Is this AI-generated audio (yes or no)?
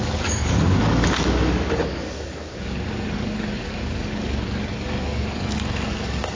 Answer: yes